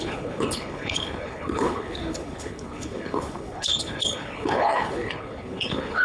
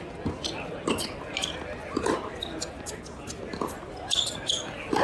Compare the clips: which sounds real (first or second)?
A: second